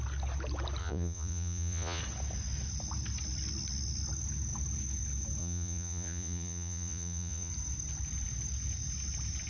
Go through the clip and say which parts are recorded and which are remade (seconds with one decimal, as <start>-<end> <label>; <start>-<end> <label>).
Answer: 0.0-0.8 recorded; 0.8-2.0 remade; 2.0-5.4 recorded; 5.4-7.5 remade; 7.5-9.5 recorded